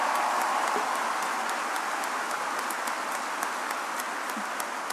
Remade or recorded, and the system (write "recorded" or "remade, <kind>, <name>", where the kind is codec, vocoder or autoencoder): recorded